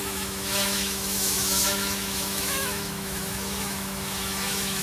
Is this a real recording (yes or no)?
no